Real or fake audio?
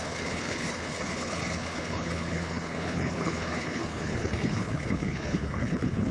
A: fake